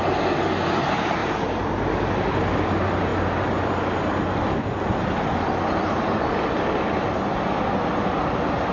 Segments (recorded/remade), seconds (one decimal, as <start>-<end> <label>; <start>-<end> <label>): 0.0-8.7 recorded